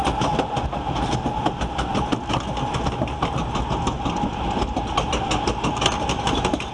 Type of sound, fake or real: real